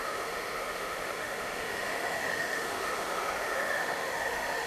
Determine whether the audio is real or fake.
fake